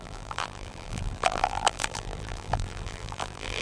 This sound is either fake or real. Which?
fake